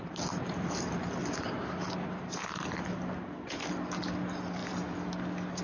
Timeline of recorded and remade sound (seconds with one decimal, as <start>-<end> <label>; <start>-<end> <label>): 0.0-5.6 recorded